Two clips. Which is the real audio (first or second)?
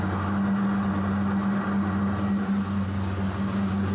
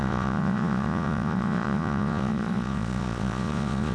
first